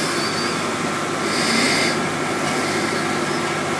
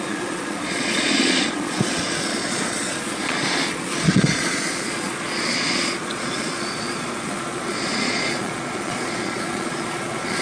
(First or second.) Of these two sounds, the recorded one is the first